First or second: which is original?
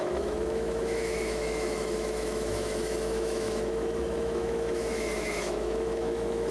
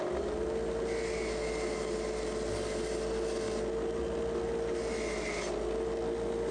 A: second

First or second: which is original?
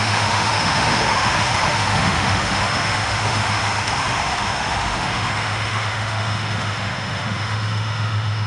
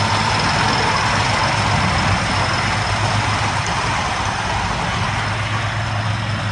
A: second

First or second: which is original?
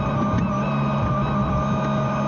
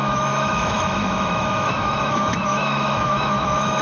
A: first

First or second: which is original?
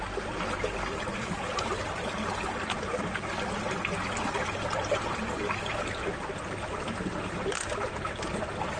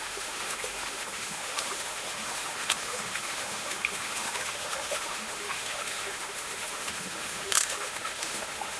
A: first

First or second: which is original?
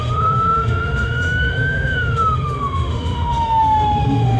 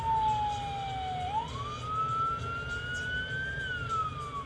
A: second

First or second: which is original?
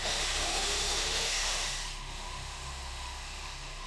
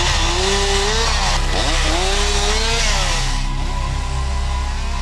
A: second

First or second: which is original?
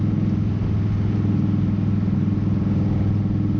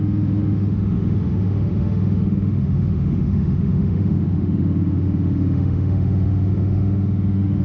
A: first